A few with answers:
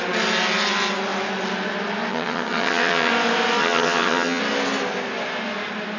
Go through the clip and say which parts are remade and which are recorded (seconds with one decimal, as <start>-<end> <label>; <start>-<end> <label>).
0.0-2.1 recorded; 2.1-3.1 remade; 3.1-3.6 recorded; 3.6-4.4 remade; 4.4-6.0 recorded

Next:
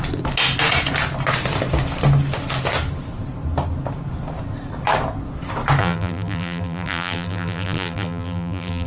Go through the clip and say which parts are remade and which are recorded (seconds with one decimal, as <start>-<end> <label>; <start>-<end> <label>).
0.0-5.8 recorded; 5.8-8.9 remade

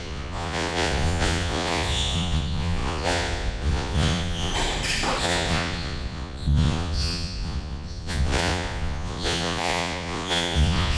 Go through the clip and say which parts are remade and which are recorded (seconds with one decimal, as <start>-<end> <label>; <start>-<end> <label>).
0.0-4.5 remade; 4.5-5.2 recorded; 5.2-11.0 remade

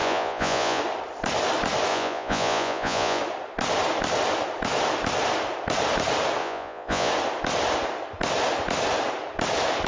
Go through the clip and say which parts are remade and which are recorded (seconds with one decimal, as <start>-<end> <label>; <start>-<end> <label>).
0.0-0.8 remade; 0.8-1.9 recorded; 1.9-3.2 remade; 3.2-6.4 recorded; 6.4-7.1 remade; 7.1-9.9 recorded

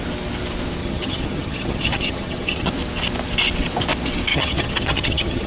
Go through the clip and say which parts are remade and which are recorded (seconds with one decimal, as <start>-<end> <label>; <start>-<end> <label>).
0.0-0.8 recorded; 0.8-2.7 remade; 2.7-4.3 recorded; 4.3-5.5 remade

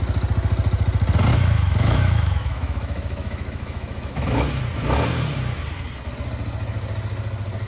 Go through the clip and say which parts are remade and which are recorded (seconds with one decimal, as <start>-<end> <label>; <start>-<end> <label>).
0.0-1.3 recorded; 1.3-4.6 remade; 4.6-7.7 recorded